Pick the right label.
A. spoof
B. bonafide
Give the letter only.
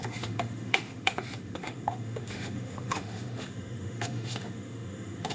A